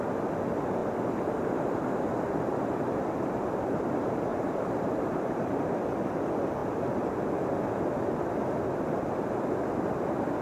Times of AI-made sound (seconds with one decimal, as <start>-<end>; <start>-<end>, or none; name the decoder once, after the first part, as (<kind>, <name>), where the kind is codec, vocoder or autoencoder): 4.3-5.7 (vocoder, BigVGAN v2)